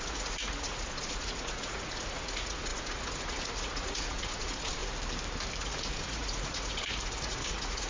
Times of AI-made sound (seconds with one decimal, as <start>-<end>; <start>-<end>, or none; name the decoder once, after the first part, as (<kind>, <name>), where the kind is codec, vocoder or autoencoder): 0.0-4.8 (vocoder, Vocos); 5.6-7.9